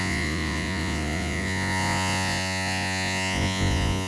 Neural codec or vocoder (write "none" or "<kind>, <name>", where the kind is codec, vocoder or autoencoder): vocoder, Vocos